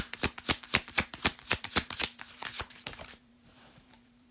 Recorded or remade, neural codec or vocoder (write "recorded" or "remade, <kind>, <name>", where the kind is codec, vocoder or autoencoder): remade, vocoder, BigVGAN v2